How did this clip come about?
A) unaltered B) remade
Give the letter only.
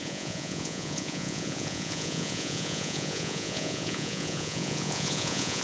B